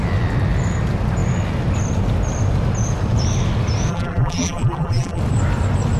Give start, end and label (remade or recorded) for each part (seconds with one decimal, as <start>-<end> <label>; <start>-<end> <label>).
0.0-3.9 recorded; 3.9-5.2 remade; 5.2-6.0 recorded